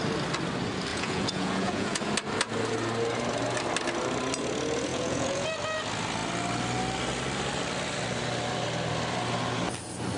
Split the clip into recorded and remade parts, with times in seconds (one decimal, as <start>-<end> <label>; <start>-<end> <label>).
0.0-0.9 recorded; 0.9-2.0 remade; 2.0-4.9 recorded; 4.9-5.5 remade; 5.5-10.2 recorded